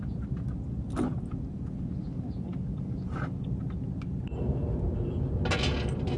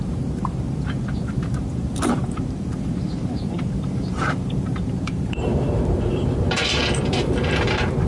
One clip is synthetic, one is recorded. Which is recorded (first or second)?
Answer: first